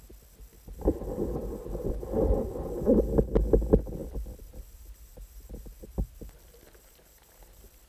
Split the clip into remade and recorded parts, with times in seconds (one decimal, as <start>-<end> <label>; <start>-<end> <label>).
0.0-0.9 recorded; 0.9-1.6 remade; 1.6-4.0 recorded; 4.0-4.5 remade; 4.5-7.9 recorded